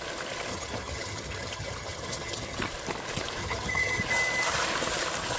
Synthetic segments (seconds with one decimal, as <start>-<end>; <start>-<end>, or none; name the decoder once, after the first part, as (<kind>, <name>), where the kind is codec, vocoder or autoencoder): 0.5-2.7 (vocoder, HiFi-GAN); 3.4-4.0